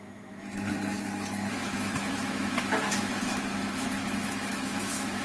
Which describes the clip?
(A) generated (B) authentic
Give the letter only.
A